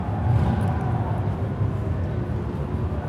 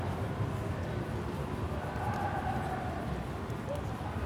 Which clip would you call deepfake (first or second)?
second